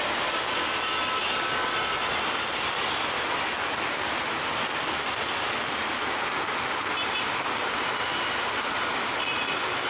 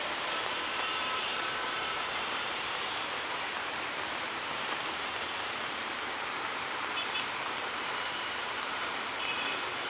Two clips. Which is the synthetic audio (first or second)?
second